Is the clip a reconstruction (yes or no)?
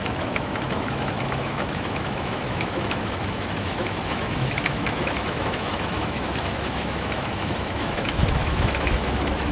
yes